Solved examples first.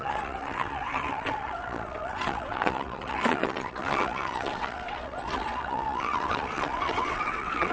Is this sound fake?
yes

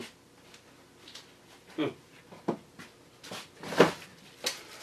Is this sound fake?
no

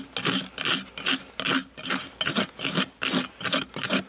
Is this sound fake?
no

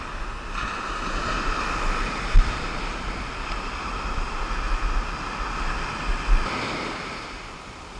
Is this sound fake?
no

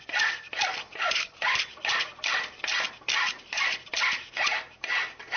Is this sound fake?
yes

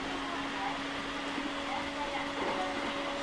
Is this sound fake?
no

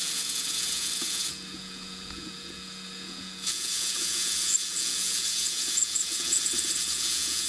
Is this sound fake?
yes